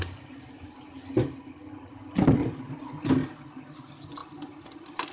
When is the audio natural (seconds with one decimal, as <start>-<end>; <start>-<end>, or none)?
0.0-5.1